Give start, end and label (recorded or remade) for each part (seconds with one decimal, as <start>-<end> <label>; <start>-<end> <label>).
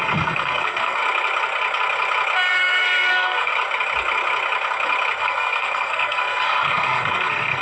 0.0-1.0 remade; 1.0-2.5 recorded; 2.5-3.5 remade; 3.5-5.2 recorded; 5.2-7.6 remade